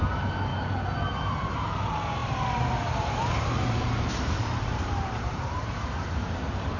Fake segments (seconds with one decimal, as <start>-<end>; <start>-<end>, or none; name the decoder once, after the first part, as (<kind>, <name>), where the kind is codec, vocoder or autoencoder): 0.0-0.5 (vocoder, BigVGAN v2); 1.1-6.8